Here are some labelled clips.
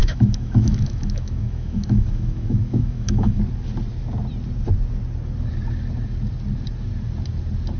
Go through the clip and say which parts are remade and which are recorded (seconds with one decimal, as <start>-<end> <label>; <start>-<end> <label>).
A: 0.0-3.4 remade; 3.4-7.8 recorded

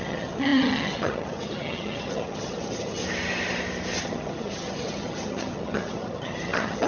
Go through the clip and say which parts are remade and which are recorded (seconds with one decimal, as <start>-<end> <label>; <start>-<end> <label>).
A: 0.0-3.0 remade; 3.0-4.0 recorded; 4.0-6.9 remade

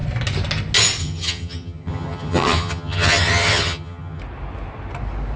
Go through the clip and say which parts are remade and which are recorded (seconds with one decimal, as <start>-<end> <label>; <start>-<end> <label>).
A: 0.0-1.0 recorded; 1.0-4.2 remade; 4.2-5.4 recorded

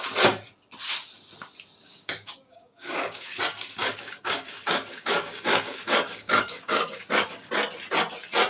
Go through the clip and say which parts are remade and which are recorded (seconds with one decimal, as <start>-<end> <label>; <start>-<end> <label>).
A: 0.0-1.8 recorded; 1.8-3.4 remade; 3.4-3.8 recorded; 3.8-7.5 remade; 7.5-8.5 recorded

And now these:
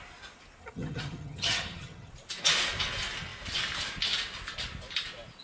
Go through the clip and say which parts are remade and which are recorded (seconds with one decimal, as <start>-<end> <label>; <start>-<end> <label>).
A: 0.0-0.6 recorded; 0.6-2.1 remade; 2.1-5.4 recorded

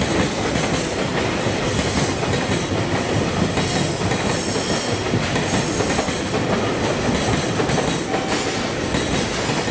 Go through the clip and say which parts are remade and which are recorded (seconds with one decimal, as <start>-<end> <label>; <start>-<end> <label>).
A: 0.0-9.7 recorded

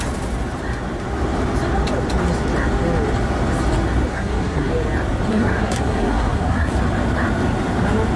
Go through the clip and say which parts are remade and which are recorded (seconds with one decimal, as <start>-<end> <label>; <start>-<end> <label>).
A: 0.0-4.1 recorded; 4.1-4.7 remade; 4.7-5.3 recorded; 5.3-6.7 remade; 6.7-8.2 recorded